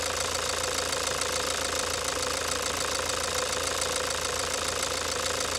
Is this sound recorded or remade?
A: recorded